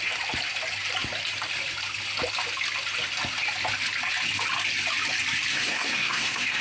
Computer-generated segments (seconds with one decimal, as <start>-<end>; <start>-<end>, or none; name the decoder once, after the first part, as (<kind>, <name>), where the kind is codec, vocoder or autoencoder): 5.5-6.6 (codec, SNAC)